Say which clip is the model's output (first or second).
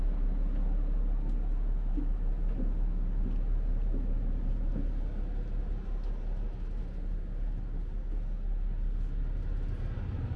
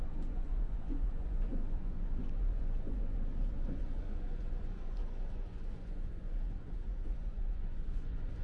second